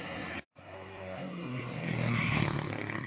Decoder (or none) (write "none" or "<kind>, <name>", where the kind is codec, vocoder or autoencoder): codec, SNAC